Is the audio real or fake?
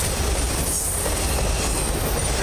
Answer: real